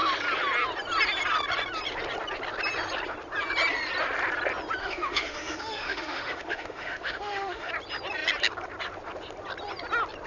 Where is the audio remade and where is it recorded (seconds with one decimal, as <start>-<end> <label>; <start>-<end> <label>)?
0.0-4.8 recorded; 4.8-7.7 remade; 7.7-10.3 recorded

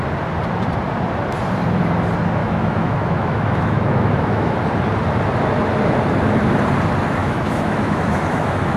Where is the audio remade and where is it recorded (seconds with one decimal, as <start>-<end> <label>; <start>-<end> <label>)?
0.0-2.4 recorded; 2.4-4.6 remade; 4.6-7.2 recorded; 7.2-8.8 remade

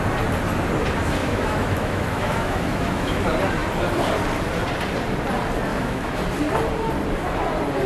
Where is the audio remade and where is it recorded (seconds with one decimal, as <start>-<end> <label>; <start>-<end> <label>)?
0.0-1.2 recorded; 1.2-3.2 remade; 3.2-5.7 recorded; 5.7-6.2 remade; 6.2-7.9 recorded

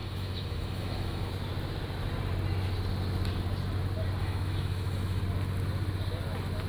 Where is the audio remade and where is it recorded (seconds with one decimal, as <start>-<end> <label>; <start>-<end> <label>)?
0.0-1.3 remade; 1.3-4.2 recorded; 4.2-5.2 remade; 5.2-6.7 recorded

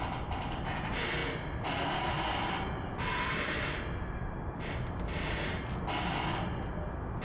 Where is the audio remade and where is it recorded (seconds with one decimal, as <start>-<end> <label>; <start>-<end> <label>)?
0.0-7.2 recorded